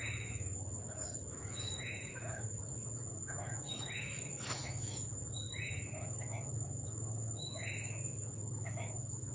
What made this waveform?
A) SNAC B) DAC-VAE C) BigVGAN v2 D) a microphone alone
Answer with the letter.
B